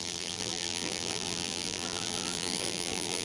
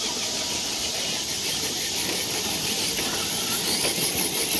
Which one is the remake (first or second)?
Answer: first